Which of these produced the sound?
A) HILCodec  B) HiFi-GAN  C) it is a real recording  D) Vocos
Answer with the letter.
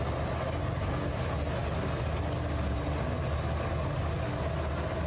C